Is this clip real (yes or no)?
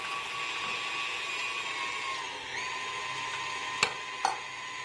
yes